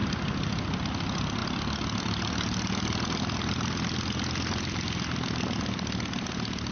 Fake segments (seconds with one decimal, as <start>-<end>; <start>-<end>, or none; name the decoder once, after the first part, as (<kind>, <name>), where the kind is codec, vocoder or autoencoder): none